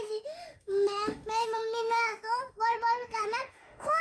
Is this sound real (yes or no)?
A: no